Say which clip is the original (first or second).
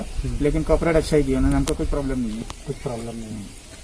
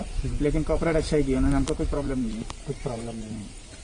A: first